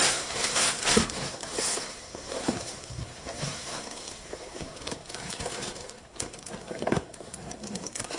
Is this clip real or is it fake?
fake